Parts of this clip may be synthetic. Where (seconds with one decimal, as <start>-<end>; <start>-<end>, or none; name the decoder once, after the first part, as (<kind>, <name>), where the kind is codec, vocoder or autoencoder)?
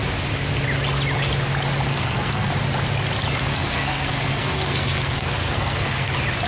1.9-2.5 (codec, SNAC); 3.5-6.1